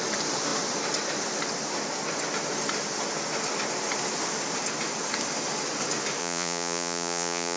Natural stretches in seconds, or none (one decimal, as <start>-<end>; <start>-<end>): 0.0-6.2

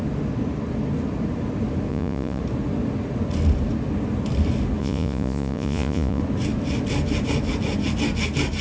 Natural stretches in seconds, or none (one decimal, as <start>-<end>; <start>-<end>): 0.0-1.9; 2.4-4.8; 6.2-8.6

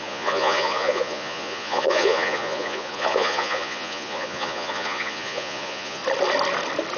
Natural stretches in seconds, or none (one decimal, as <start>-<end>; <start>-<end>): 6.0-7.0

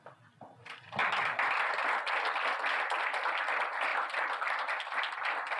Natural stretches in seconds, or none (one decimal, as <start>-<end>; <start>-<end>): 0.0-5.6